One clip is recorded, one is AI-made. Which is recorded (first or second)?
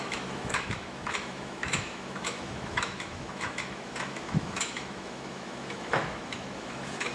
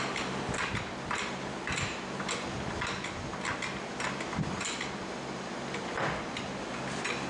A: second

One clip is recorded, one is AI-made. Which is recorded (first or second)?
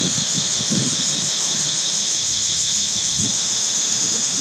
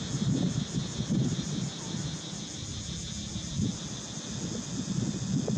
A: second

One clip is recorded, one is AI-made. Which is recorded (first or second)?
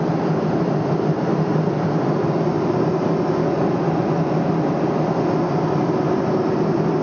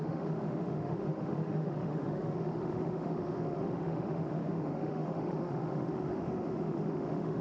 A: first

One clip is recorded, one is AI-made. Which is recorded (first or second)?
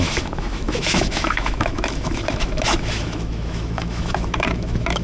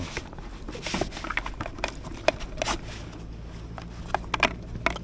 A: second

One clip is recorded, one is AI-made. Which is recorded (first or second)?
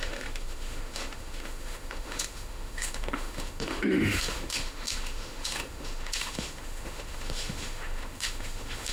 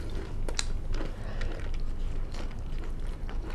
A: second